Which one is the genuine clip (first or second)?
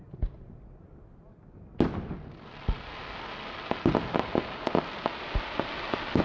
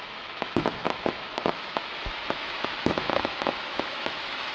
first